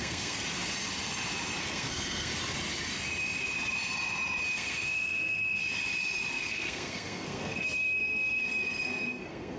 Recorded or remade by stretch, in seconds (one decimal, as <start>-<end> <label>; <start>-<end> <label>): 0.0-0.4 remade; 0.4-1.6 recorded; 1.6-2.3 remade; 2.3-4.5 recorded; 4.5-5.6 remade; 5.6-6.3 recorded; 6.3-9.6 remade